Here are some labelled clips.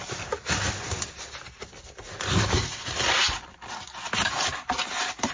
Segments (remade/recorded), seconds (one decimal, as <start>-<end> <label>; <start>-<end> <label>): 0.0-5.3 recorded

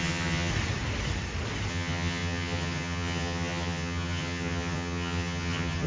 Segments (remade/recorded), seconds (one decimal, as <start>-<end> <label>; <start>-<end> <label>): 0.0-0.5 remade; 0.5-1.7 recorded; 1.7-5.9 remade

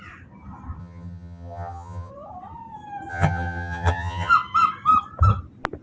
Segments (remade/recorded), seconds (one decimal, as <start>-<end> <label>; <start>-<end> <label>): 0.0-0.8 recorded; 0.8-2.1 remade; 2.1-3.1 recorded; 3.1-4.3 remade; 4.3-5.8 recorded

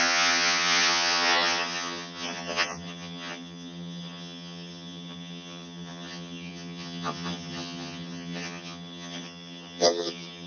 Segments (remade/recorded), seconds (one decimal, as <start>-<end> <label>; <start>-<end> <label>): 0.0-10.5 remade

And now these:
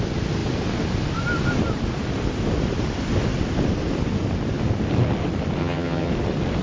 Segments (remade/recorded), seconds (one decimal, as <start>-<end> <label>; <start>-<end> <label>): 0.0-5.6 recorded; 5.6-6.1 remade; 6.1-6.6 recorded

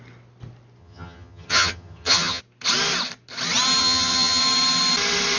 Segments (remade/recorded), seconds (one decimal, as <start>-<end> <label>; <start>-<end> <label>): 0.0-0.8 recorded; 0.8-2.4 remade; 2.4-3.8 recorded; 3.8-4.4 remade; 4.4-5.4 recorded

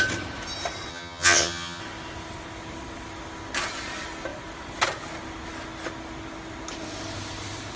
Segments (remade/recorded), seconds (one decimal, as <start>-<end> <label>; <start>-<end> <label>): 0.0-0.9 recorded; 0.9-1.8 remade; 1.8-7.8 recorded

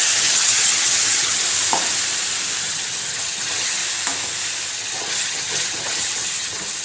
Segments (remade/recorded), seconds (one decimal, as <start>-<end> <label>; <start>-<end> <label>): 0.0-1.4 remade; 1.4-2.6 recorded; 2.6-3.8 remade; 3.8-4.7 recorded; 4.7-6.8 remade